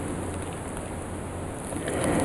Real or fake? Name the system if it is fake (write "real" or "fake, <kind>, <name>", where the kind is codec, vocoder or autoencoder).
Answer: real